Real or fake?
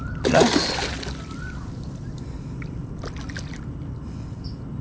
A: real